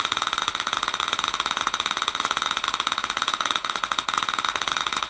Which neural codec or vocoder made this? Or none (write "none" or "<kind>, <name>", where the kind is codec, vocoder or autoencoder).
codec, HILCodec